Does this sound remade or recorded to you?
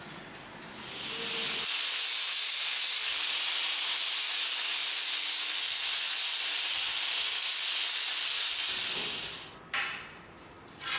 recorded